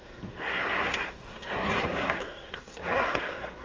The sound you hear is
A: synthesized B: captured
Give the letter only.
A